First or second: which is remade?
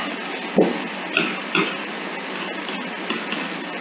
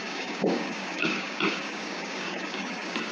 second